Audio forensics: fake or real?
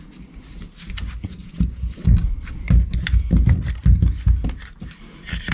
real